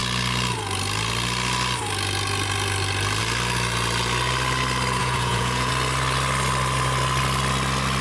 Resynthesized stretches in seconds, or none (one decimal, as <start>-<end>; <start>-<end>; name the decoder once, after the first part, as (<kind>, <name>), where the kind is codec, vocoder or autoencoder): 5.0-5.7 (vocoder, Vocos)